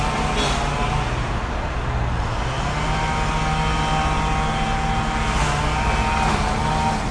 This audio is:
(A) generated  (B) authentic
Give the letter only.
B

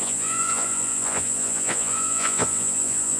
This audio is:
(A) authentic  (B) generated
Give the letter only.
B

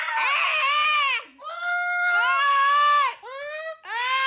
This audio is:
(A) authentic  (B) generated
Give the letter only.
A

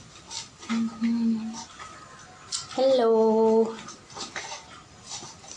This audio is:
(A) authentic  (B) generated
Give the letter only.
A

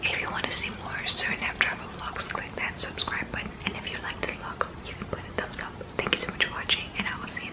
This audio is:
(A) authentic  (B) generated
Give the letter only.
A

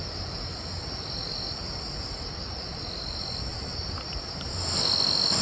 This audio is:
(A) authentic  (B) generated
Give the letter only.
A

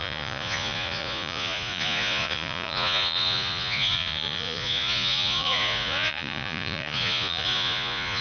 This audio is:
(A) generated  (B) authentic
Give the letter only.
A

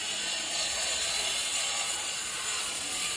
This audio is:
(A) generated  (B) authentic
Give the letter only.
A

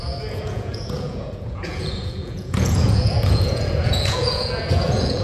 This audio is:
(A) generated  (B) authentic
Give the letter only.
A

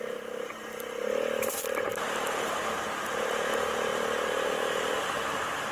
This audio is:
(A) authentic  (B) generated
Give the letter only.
A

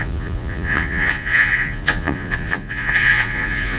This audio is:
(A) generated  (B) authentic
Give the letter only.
A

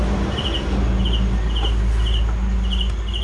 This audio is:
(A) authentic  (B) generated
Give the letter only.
A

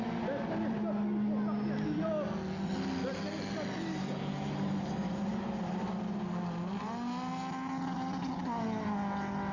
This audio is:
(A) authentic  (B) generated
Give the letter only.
A